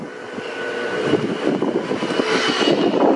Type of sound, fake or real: real